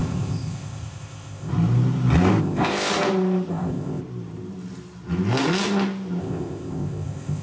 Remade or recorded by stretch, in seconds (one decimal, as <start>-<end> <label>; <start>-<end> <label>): 0.0-1.5 remade; 1.5-2.4 recorded; 2.4-2.9 remade; 2.9-3.5 recorded; 3.5-4.0 remade; 4.0-6.2 recorded; 6.2-7.4 remade